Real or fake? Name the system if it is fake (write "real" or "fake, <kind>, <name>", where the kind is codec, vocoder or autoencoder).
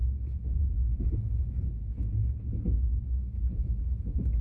fake, vocoder, Vocos